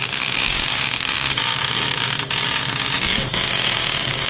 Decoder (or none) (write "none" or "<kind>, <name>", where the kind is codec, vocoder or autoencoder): codec, DAC